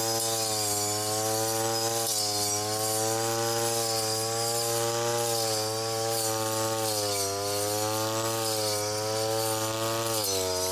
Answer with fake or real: real